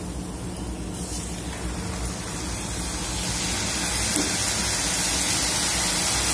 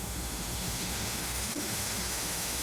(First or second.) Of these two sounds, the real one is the first